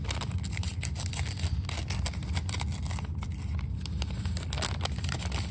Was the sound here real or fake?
real